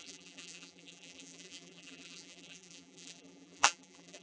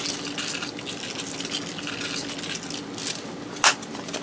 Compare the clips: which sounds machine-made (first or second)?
first